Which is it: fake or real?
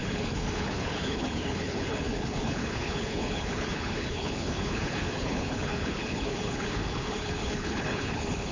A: fake